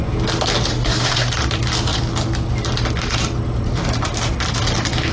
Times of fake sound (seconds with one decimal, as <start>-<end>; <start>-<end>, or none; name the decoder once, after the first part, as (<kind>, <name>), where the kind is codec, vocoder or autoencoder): 0.7-1.3 (codec, SNAC)

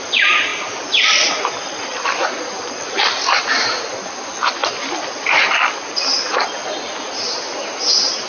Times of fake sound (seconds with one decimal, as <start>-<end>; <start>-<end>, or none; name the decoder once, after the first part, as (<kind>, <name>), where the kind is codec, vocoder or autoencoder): none